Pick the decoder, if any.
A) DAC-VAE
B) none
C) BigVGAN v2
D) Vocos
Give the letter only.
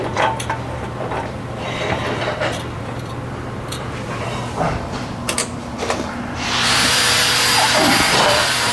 C